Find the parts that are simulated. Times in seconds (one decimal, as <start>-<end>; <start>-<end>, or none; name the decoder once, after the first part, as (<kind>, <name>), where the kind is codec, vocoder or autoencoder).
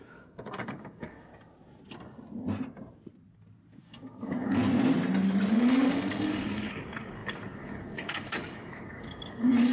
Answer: 0.0-1.3 (codec, DAC); 3.8-4.6; 5.5-9.7